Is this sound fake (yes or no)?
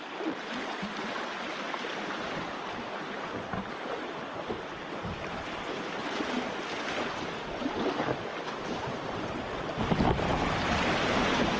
no